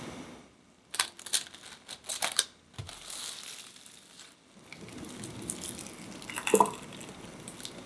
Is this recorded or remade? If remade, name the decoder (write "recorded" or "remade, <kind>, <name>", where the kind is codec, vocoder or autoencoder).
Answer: recorded